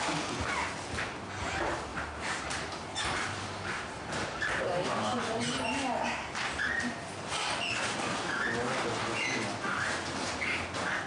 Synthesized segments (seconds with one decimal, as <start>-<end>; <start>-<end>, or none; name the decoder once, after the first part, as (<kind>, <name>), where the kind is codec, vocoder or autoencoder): 1.9-5.6 (vocoder, BigVGAN v2)